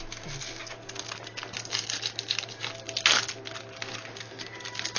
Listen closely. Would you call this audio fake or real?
real